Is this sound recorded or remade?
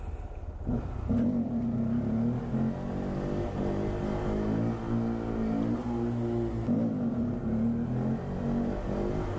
recorded